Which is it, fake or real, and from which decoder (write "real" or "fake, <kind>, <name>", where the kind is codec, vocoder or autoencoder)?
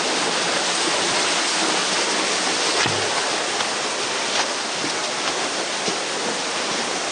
real